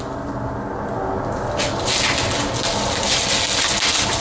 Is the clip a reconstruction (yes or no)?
no